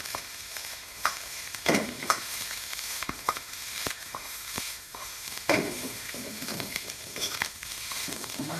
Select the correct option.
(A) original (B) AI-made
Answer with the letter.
B